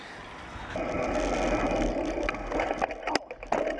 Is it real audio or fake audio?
real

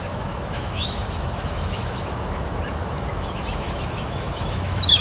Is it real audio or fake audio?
fake